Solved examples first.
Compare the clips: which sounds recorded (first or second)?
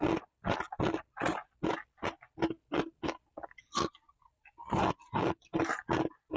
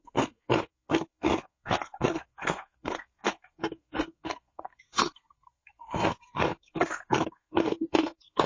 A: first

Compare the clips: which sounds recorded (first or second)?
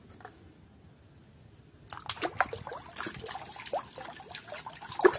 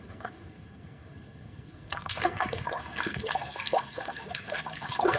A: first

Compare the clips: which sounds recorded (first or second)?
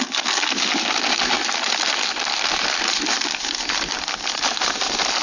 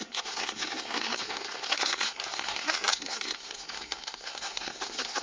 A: first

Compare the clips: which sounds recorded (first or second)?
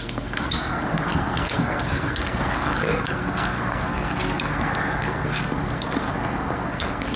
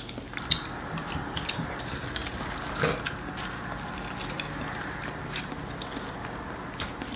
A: second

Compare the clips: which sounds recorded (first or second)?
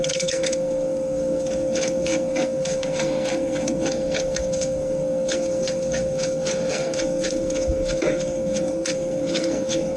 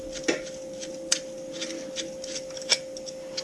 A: second